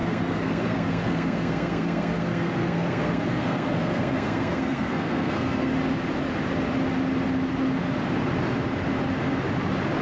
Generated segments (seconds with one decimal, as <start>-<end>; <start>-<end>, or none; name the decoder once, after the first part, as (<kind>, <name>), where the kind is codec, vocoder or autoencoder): 0.0-5.7 (codec, SNAC)

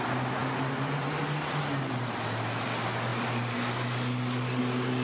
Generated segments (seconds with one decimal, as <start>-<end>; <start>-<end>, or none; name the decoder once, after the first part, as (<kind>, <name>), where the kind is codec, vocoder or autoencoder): 0.4-1.2 (vocoder, BigVGAN v2)

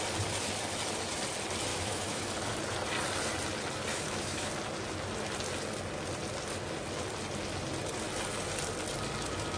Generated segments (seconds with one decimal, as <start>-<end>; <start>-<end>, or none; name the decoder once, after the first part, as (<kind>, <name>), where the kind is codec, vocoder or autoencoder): 1.7-2.3 (autoencoder, DAC-VAE); 3.9-4.5

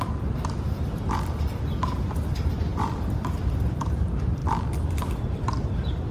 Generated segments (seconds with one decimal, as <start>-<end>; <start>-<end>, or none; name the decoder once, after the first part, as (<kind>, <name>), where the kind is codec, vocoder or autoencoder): 0.0-6.1 (vocoder, BigVGAN v2)